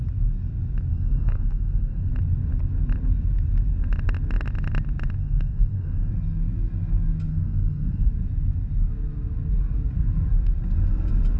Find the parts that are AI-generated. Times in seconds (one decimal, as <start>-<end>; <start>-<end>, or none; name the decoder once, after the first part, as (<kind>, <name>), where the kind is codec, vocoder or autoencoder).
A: 0.9-2.1 (codec, SNAC); 5.2-6.1; 7.3-8.1